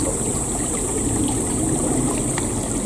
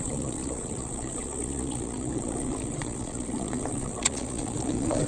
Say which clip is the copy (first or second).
second